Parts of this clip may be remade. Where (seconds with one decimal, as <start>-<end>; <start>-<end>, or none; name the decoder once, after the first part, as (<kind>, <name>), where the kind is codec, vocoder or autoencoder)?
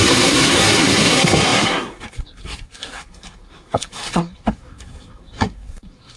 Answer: 0.0-6.2 (codec, SNAC)